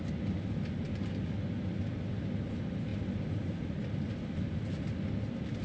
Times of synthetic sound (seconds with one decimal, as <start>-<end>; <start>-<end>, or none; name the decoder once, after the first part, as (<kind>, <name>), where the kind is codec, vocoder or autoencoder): none